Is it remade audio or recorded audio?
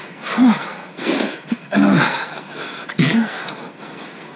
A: remade